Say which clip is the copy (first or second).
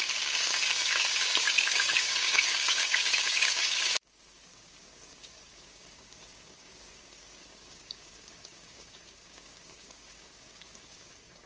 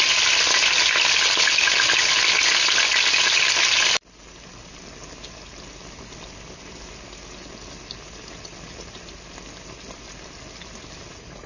first